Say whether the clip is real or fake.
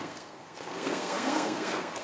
fake